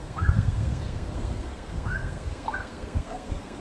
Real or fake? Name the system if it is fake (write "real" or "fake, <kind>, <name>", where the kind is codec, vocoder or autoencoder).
fake, codec, SNAC